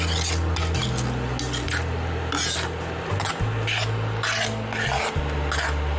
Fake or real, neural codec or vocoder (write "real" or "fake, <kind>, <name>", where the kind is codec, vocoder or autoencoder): real